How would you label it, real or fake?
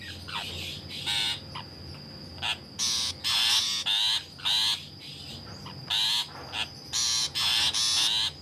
real